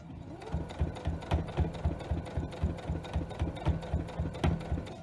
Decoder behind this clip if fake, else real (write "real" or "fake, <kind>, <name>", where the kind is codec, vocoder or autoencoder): real